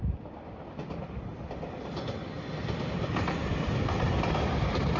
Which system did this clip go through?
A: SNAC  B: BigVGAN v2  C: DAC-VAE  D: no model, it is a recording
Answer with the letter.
D